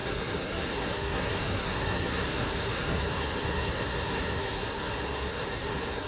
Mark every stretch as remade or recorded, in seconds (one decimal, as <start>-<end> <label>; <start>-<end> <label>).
0.0-6.1 remade